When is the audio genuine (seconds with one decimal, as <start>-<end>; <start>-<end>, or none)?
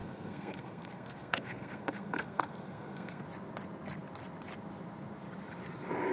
3.2-6.1